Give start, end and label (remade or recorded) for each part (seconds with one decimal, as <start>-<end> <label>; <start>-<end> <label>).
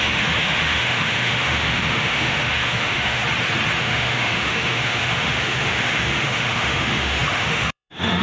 0.0-3.2 remade; 3.2-3.8 recorded; 3.8-8.2 remade